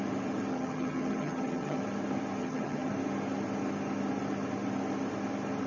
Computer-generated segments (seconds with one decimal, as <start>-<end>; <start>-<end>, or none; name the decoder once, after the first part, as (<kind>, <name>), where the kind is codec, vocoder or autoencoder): 0.5-1.8 (vocoder, HiFi-GAN); 2.4-2.9